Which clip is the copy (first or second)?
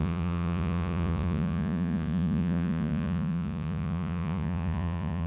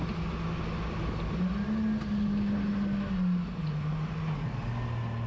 first